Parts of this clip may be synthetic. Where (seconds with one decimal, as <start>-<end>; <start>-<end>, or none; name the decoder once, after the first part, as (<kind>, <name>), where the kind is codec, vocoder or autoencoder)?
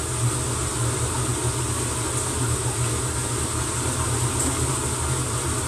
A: none